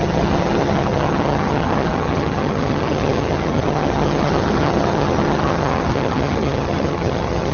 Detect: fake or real fake